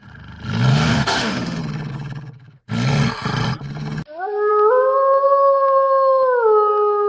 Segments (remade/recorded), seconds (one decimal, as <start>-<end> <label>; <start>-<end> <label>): 0.0-0.7 recorded; 0.7-1.6 remade; 1.6-7.1 recorded